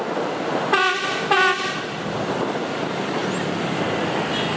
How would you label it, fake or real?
real